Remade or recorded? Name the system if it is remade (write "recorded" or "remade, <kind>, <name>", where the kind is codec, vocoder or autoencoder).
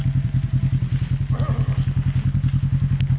recorded